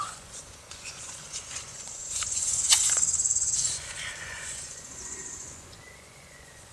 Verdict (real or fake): fake